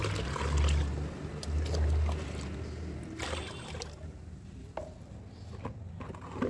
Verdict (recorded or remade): recorded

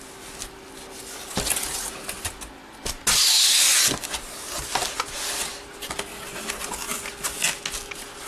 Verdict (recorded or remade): recorded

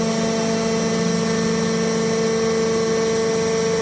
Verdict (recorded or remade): recorded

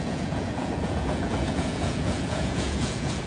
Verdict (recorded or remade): remade